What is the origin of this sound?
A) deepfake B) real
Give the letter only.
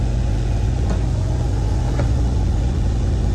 A